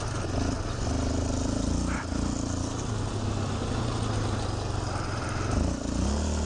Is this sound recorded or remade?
recorded